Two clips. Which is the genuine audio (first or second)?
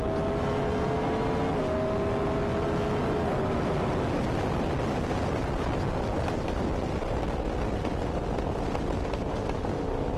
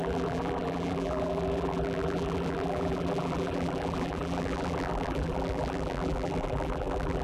first